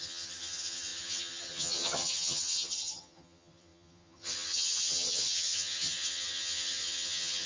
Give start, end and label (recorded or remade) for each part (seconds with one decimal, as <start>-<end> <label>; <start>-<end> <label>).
0.0-7.5 remade

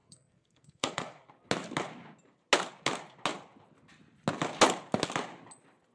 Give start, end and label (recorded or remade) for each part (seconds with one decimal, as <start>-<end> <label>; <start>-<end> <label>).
0.0-1.3 remade; 1.3-5.9 recorded

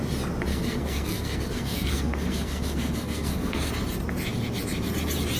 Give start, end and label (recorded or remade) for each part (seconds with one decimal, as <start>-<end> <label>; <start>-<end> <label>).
0.0-0.5 recorded; 0.5-3.7 remade; 3.7-5.4 recorded

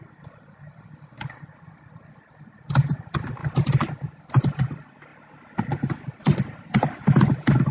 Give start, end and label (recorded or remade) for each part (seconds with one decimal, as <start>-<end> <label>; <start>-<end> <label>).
0.0-5.1 remade; 5.1-5.6 recorded; 5.6-7.7 remade

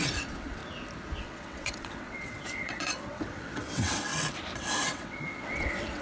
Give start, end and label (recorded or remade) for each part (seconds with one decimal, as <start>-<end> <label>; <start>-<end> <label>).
0.0-0.6 remade; 0.6-1.2 recorded; 1.2-4.1 remade; 4.1-4.6 recorded; 4.6-6.0 remade

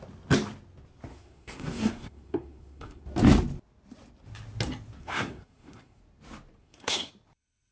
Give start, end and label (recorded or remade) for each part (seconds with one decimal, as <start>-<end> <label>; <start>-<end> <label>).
0.0-1.1 recorded; 1.1-3.0 remade; 3.0-5.0 recorded; 5.0-6.0 remade; 6.0-6.6 recorded; 6.6-7.1 remade; 7.1-7.7 recorded